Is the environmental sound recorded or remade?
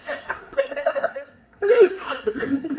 remade